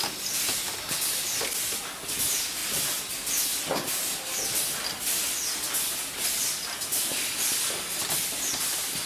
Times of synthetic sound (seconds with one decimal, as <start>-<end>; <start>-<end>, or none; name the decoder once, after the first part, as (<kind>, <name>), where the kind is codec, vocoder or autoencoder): none

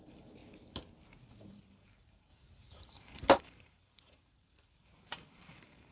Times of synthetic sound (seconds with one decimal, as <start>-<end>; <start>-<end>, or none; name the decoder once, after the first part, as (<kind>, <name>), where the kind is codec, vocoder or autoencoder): 0.0-0.4 (vocoder, BigVGAN v2); 1.3-5.9

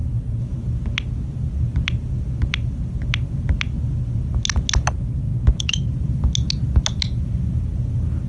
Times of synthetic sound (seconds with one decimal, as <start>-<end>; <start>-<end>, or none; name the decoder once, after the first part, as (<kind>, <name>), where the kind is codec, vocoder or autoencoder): none

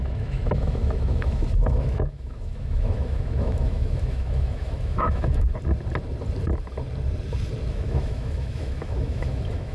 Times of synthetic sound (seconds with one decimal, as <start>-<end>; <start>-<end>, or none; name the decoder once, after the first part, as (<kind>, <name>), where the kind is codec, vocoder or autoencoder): 0.0-5.5 (autoencoder, DAC-VAE); 7.7-9.7

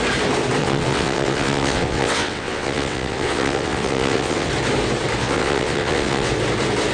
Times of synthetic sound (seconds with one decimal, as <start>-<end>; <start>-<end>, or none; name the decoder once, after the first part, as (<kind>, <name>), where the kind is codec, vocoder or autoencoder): 0.6-4.5 (vocoder, WaveNeXt); 5.2-6.3

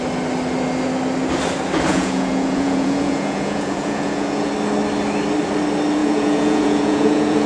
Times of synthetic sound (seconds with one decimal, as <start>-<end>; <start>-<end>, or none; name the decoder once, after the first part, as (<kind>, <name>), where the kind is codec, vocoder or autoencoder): 1.9-4.5 (vocoder, Vocos); 6.0-7.5

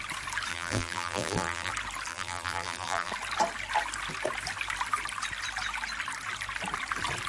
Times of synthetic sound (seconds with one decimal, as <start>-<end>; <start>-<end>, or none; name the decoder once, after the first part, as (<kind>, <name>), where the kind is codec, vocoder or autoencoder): 0.5-1.7 (vocoder, BigVGAN v2); 2.1-3.1